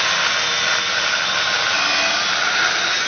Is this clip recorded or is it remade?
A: recorded